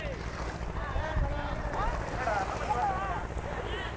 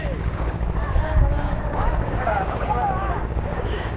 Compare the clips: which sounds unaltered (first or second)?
first